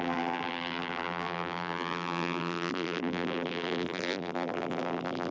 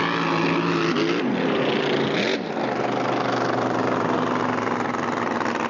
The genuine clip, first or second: second